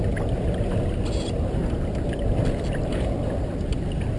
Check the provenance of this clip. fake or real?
real